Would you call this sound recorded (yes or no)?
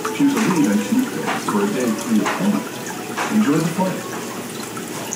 yes